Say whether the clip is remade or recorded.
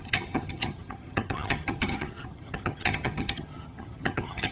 remade